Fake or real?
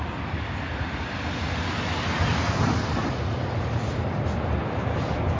real